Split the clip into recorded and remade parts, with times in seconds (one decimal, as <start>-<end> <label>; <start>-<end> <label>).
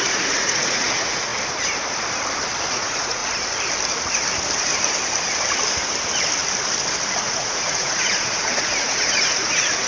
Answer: 0.0-1.3 remade; 1.3-2.7 recorded; 2.7-3.2 remade; 3.2-7.2 recorded; 7.2-9.9 remade